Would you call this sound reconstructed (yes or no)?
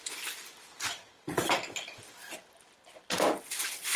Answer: no